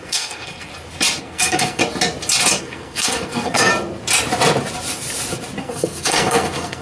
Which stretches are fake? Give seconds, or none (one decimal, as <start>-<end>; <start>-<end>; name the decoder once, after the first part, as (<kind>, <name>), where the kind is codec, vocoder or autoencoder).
0.0-0.7 (codec, SNAC); 1.2-1.8; 2.6-3.7; 5.6-6.8